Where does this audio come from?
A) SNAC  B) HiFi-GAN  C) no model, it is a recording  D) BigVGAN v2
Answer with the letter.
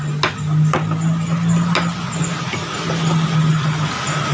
C